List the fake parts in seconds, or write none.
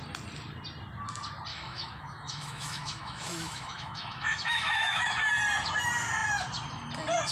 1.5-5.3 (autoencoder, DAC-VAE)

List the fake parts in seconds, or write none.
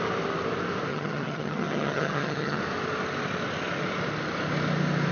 0.9-2.6 (vocoder, HiFi-GAN)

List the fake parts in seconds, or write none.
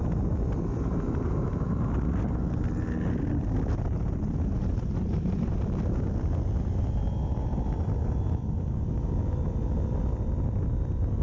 none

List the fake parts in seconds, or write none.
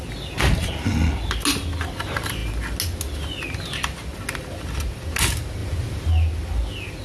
none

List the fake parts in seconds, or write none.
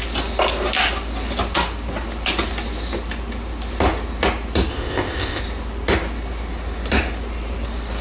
4.7-5.4 (codec, ZipCodec)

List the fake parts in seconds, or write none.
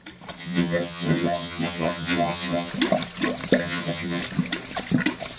0.4-2.7 (vocoder, HiFi-GAN); 3.6-4.2